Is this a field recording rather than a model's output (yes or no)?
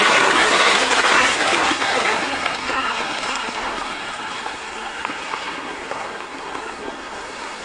no